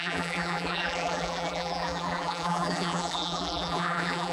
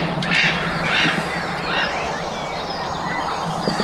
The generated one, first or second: first